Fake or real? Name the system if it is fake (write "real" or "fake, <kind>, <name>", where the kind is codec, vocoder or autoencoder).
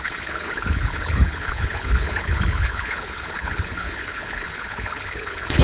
fake, codec, HILCodec